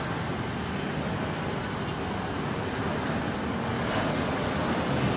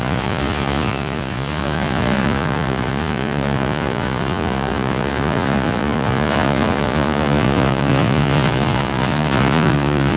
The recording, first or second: first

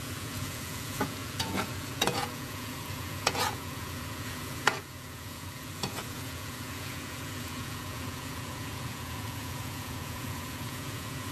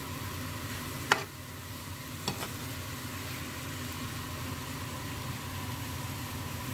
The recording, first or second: second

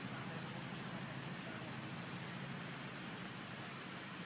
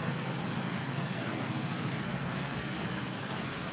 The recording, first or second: first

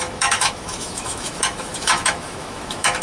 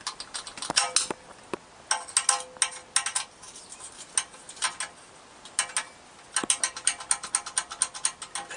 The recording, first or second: second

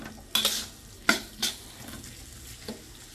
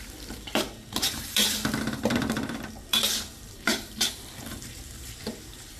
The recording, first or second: first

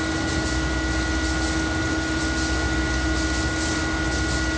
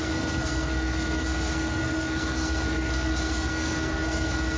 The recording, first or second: first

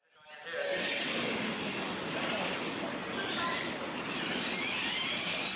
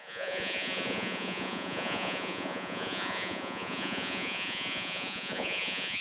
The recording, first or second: first